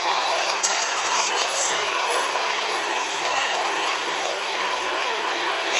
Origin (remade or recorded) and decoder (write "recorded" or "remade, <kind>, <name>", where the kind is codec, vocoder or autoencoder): remade, codec, SNAC